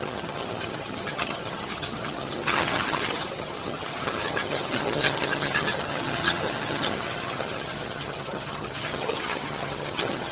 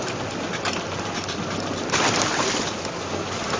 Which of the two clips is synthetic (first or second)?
first